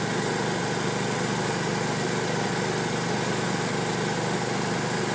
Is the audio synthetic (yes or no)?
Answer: no